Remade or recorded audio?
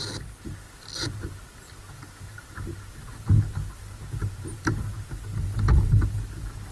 recorded